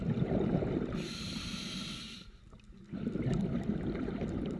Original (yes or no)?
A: yes